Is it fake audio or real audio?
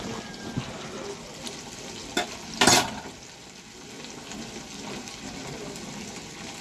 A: real